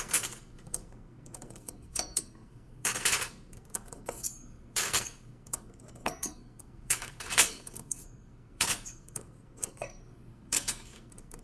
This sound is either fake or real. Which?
fake